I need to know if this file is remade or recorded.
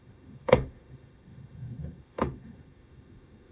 remade